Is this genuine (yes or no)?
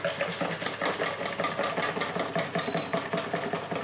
yes